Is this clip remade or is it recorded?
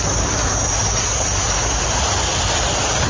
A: recorded